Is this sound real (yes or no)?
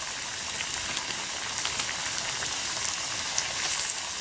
yes